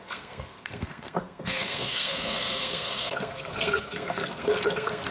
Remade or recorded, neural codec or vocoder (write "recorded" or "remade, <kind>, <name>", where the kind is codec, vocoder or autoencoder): remade, codec, SNAC